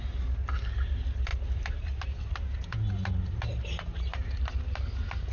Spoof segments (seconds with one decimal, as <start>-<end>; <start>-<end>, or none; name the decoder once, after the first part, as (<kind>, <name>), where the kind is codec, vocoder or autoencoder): none